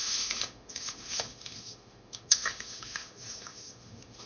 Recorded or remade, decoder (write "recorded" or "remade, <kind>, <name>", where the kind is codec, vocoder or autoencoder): remade, autoencoder, DAC-VAE